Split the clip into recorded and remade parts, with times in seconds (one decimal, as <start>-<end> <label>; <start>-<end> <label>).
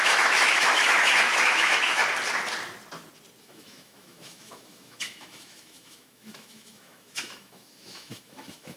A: 0.0-2.0 remade; 2.0-3.4 recorded; 3.4-8.8 remade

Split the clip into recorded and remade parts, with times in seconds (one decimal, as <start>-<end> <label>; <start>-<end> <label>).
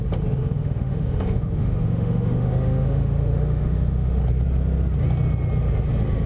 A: 0.0-0.4 recorded; 0.4-4.2 remade; 4.2-6.3 recorded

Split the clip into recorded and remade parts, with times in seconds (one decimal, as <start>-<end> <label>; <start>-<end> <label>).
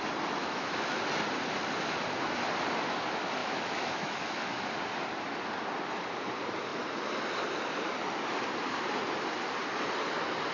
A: 0.0-0.4 recorded; 0.4-1.0 remade; 1.0-3.4 recorded; 3.4-4.7 remade; 4.7-10.5 recorded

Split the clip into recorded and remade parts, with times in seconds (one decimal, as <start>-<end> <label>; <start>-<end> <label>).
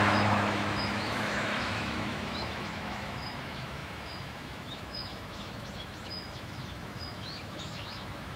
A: 0.0-8.4 remade